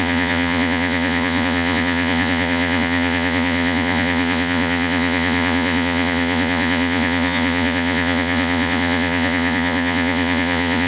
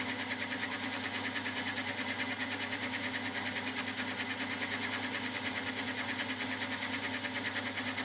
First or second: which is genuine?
second